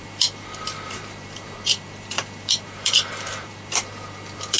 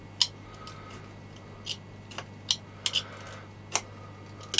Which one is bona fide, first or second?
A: second